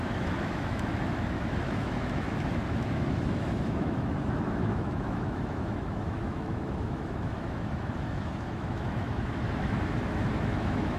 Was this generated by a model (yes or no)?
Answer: yes